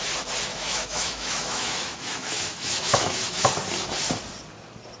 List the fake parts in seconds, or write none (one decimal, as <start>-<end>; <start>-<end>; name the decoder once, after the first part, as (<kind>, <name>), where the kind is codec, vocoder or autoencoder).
0.5-3.5 (autoencoder, DAC-VAE)